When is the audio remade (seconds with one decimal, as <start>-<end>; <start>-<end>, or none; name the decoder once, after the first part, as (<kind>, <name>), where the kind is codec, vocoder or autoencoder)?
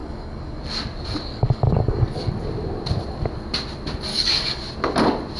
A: 0.0-0.6 (codec, DAC); 1.3-2.3; 4.1-4.7